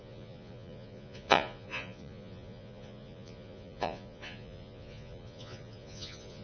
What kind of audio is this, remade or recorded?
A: remade